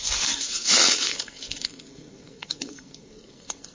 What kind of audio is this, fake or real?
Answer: fake